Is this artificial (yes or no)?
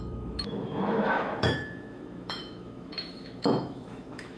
yes